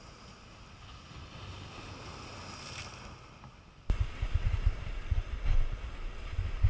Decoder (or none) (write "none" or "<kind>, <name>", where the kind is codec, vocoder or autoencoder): none